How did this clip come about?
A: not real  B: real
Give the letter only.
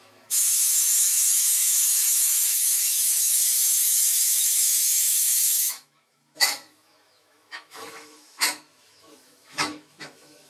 A